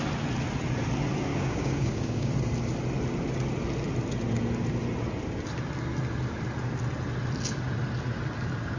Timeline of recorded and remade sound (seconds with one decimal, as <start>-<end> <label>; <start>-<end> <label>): 0.0-1.3 recorded; 1.3-2.3 remade; 2.3-8.8 recorded